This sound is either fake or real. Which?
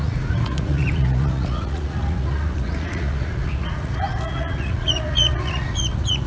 fake